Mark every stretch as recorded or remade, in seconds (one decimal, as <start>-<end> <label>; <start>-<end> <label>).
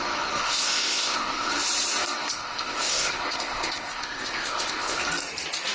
0.0-0.4 recorded; 0.4-1.5 remade; 1.5-2.3 recorded; 2.3-5.0 remade; 5.0-5.7 recorded